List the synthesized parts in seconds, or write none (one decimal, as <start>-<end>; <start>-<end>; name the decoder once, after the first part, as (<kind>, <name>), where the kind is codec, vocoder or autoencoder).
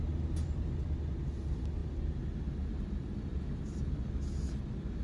none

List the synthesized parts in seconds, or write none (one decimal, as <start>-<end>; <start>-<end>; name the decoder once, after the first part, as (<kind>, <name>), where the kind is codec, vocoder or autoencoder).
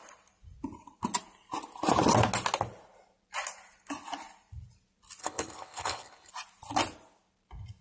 5.2-6.3 (codec, HILCodec)